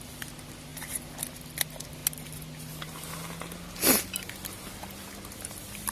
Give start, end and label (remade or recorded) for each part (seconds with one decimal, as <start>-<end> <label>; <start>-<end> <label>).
0.0-0.7 recorded; 0.7-1.2 remade; 1.2-5.9 recorded